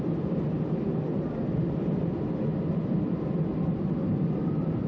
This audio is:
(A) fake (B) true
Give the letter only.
A